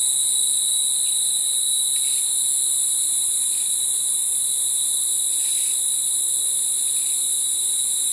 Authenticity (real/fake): real